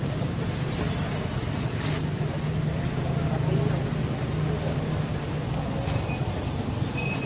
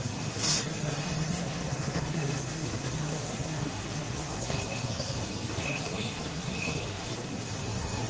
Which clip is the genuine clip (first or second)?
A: first